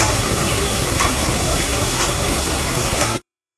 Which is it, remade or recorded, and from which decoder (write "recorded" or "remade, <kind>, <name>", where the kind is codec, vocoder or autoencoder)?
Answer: remade, codec, SNAC